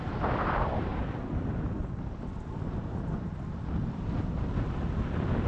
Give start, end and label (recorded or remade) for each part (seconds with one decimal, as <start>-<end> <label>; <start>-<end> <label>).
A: 0.0-5.5 recorded